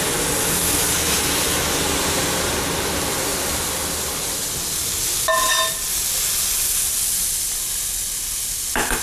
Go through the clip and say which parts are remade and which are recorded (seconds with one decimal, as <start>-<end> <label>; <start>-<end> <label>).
0.0-9.0 recorded